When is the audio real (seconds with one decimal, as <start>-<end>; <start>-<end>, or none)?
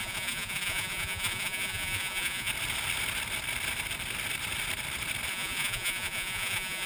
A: 2.5-5.3